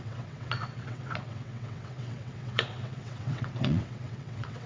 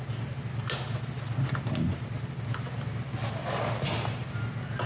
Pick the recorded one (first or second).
second